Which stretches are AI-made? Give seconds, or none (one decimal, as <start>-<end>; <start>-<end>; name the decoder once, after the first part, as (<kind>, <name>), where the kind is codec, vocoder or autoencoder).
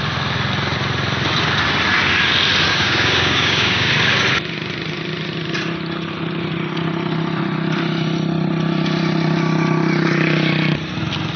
2.7-3.9 (codec, DAC)